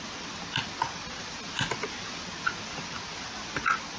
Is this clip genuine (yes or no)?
yes